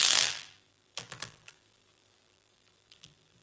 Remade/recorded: remade